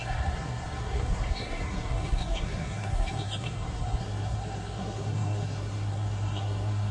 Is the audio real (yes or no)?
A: no